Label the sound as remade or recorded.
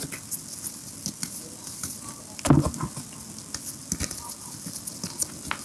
recorded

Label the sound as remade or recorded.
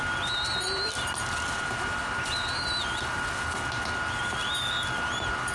recorded